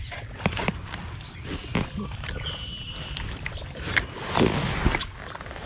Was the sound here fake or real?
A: real